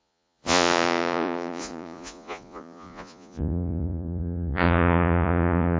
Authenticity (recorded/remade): remade